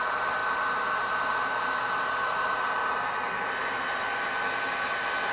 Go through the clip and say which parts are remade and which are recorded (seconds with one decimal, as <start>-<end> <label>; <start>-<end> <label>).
0.0-5.3 recorded